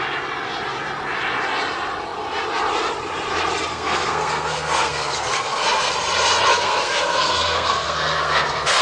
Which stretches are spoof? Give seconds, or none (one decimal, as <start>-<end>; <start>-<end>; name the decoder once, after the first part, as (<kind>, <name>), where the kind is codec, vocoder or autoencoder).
3.7-5.9 (codec, SNAC); 6.5-8.8